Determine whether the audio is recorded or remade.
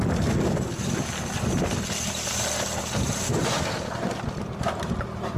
recorded